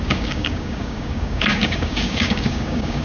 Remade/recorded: remade